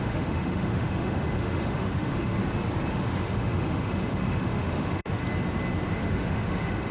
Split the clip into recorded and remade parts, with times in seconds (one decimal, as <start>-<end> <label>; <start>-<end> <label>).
0.0-2.4 remade; 2.4-2.9 recorded; 2.9-5.2 remade; 5.2-5.9 recorded; 5.9-6.9 remade